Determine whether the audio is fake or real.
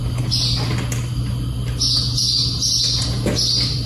real